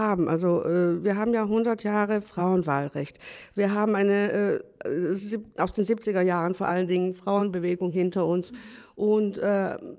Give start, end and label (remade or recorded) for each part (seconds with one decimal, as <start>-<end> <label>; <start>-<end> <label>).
0.0-7.4 recorded; 7.4-8.9 remade; 8.9-10.0 recorded